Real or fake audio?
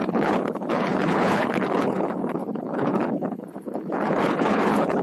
fake